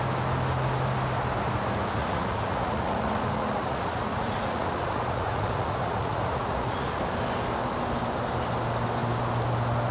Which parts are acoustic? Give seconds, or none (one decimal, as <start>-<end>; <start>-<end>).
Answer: 0.0-2.0; 7.0-9.9